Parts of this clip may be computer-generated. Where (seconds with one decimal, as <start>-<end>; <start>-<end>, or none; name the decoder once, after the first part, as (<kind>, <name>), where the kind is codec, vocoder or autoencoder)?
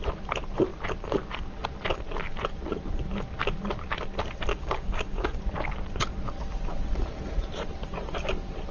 4.5-5.4 (codec, DAC)